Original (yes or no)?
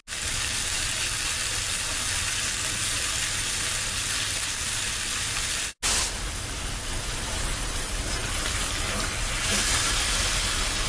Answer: yes